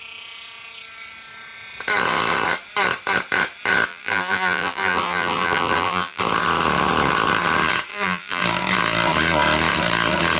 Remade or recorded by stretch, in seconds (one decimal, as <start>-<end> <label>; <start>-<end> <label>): 0.0-3.9 recorded; 3.9-6.2 remade; 6.2-7.9 recorded; 7.9-8.4 remade; 8.4-10.4 recorded